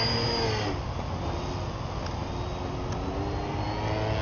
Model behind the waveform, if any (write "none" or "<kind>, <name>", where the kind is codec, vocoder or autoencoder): none